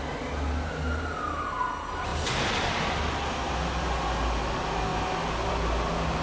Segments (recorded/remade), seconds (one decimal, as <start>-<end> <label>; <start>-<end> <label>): 0.0-2.1 recorded; 2.1-2.7 remade; 2.7-6.2 recorded